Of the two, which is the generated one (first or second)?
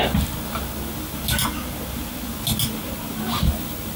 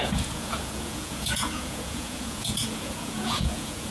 second